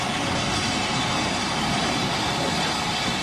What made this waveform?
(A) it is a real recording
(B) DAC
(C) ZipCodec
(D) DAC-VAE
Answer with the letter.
A